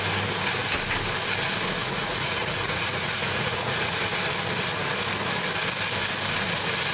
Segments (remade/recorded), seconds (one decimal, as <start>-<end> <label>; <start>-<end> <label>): 0.0-1.8 recorded; 1.8-4.0 remade; 4.0-6.9 recorded